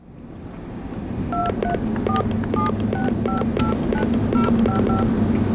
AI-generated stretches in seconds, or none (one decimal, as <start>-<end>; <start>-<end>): 1.4-4.7